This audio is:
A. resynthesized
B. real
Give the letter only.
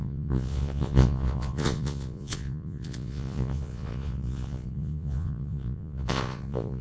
A